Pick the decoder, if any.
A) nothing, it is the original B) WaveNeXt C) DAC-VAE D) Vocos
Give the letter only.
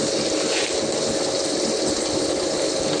A